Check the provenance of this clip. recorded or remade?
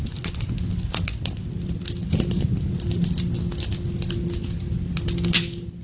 recorded